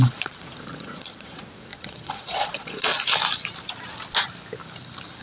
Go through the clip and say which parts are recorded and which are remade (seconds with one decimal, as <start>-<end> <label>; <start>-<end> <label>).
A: 0.0-2.9 remade; 2.9-5.2 recorded